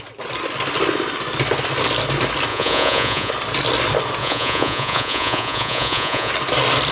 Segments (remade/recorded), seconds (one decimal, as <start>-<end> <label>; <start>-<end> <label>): 0.0-2.5 recorded; 2.5-3.3 remade; 3.3-4.2 recorded; 4.2-6.3 remade; 6.3-6.9 recorded